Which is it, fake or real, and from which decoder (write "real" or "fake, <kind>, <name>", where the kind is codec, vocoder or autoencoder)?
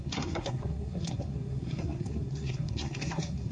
fake, codec, SNAC